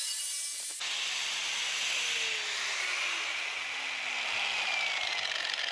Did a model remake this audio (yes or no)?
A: no